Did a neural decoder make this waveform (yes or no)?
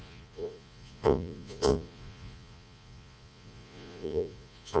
yes